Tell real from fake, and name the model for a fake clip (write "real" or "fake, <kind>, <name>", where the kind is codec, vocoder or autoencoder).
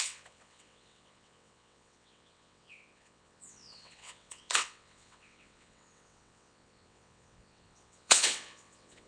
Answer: fake, vocoder, WaveNeXt